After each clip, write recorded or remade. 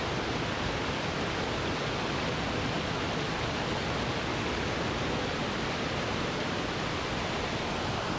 recorded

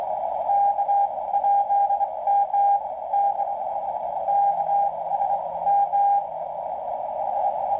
recorded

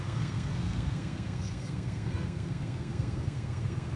remade